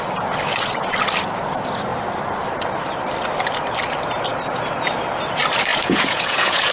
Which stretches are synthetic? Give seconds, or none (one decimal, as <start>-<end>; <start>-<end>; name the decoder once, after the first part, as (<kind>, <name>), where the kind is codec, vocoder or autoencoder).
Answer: 5.7-6.7 (vocoder, Vocos)